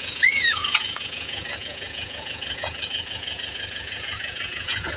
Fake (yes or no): yes